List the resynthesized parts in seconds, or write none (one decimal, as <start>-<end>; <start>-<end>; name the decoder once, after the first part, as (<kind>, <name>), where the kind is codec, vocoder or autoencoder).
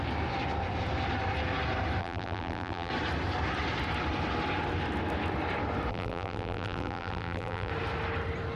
2.0-2.9 (vocoder, BigVGAN v2); 5.9-7.7